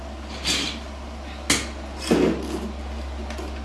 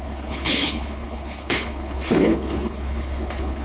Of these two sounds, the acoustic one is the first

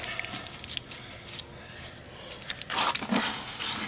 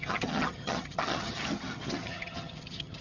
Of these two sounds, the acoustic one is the first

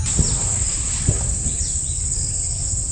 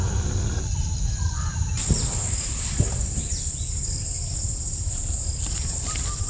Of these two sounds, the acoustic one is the first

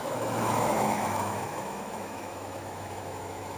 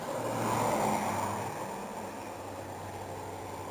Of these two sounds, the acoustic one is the second